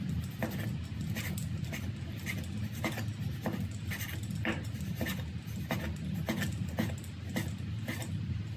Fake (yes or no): no